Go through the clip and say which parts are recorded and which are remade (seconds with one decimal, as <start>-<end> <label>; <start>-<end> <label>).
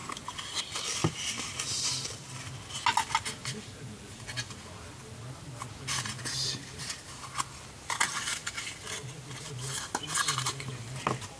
0.0-3.4 recorded; 3.4-4.5 remade; 4.5-11.4 recorded